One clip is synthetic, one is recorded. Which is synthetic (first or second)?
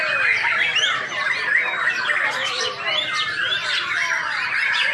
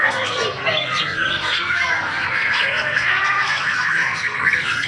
second